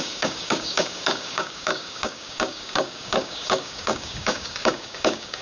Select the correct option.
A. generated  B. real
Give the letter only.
A